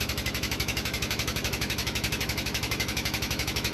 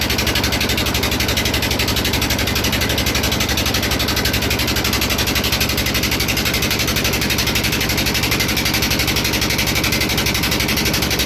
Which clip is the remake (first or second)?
first